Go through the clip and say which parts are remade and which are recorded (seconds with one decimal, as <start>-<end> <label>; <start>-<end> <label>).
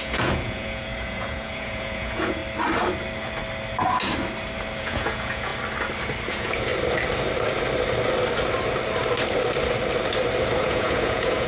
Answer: 0.0-2.4 remade; 2.4-4.8 recorded; 4.8-5.5 remade; 5.5-6.3 recorded; 6.3-6.7 remade; 6.7-10.6 recorded; 10.6-11.5 remade